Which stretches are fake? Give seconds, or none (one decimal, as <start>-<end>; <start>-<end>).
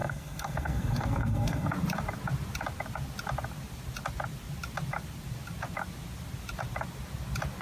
0.0-1.7